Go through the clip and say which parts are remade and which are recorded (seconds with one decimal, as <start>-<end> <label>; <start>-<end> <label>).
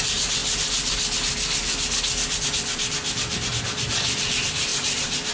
0.0-4.7 recorded; 4.7-5.3 remade